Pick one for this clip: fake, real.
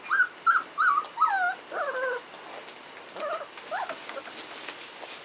real